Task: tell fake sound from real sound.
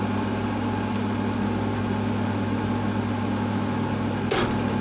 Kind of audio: real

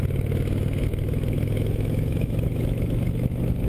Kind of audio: fake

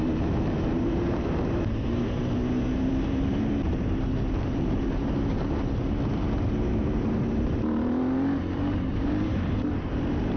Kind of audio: fake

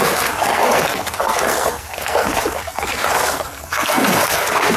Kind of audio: fake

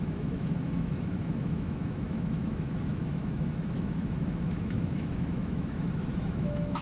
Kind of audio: fake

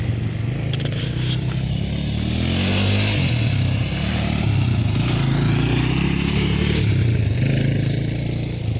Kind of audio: real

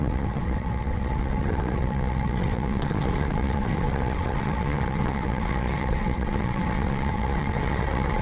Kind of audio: fake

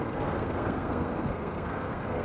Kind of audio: fake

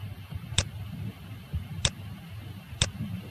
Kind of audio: real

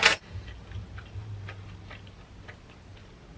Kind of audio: real